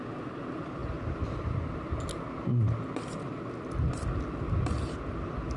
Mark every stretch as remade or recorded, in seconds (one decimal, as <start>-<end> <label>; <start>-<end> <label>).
0.0-5.6 recorded